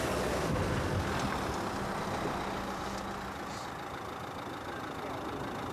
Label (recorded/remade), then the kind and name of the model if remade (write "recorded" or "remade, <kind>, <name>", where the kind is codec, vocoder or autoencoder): recorded